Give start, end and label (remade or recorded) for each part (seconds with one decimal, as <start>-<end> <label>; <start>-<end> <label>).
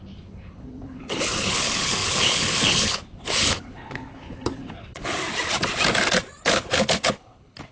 0.0-5.2 remade; 5.2-6.4 recorded; 6.4-7.7 remade